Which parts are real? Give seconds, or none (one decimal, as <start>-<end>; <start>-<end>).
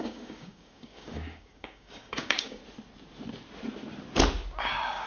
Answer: 2.6-4.6